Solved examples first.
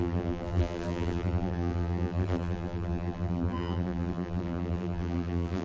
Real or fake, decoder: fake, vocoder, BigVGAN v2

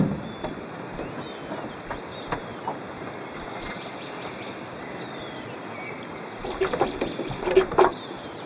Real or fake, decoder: real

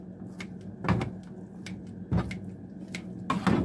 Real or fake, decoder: real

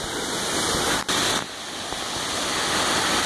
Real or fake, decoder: real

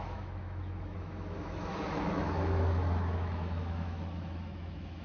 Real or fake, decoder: fake, autoencoder, DAC-VAE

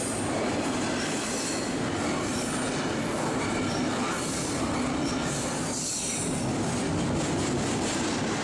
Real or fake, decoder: real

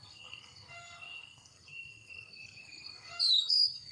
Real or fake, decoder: fake, codec, SNAC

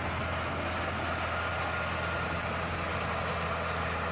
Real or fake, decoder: real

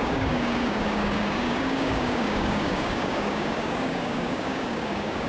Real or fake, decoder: fake, codec, DAC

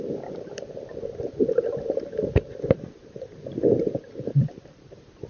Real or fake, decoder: fake, vocoder, BigVGAN v2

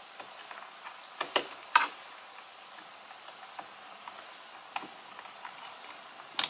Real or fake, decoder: real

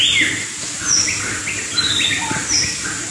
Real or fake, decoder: real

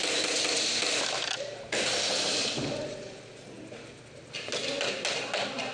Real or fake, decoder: real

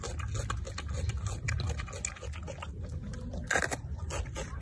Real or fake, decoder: real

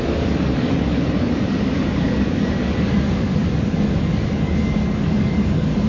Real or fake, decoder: fake, codec, DAC